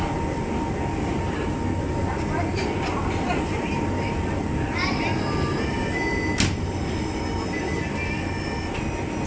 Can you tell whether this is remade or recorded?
recorded